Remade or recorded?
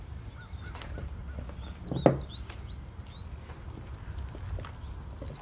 recorded